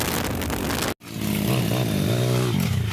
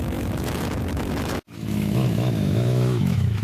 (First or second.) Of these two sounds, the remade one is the second